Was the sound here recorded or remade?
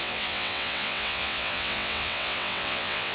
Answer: remade